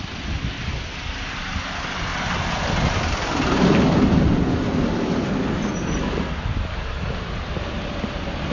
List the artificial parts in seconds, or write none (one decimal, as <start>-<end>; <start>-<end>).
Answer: none